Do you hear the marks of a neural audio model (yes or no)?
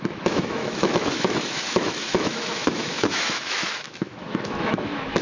yes